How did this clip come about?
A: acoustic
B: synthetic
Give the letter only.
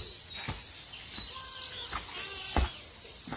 A